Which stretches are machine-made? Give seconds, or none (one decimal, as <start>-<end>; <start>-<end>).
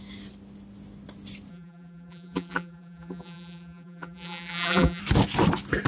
1.5-5.0